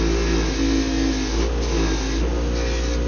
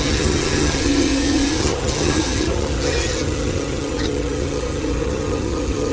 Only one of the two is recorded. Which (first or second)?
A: first